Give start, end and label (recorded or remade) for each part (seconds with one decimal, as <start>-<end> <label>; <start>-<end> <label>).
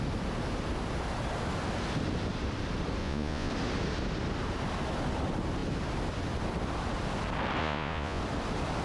0.0-3.0 recorded; 3.0-3.5 remade; 3.5-7.6 recorded; 7.6-8.2 remade; 8.2-8.8 recorded